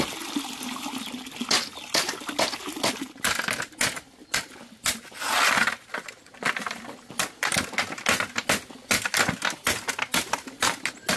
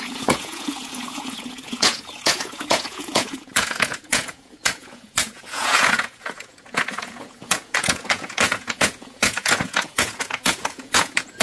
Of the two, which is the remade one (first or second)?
second